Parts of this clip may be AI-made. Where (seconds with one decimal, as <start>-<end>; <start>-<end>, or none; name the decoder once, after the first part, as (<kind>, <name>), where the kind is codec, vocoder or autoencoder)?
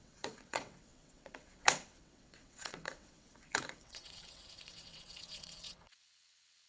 0.0-6.7 (vocoder, WaveNeXt)